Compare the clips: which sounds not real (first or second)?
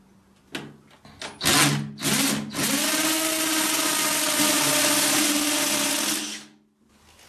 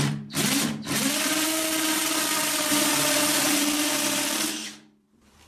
second